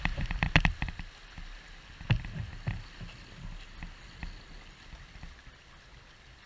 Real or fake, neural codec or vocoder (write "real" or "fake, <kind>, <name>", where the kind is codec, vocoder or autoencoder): real